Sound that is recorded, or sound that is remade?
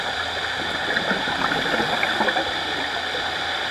recorded